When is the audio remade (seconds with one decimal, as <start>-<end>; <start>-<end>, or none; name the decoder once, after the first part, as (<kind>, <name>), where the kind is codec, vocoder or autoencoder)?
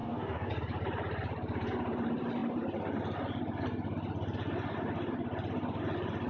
0.0-0.5 (codec, DAC)